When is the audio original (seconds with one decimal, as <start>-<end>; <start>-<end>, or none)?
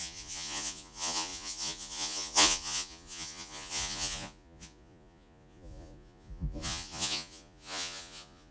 none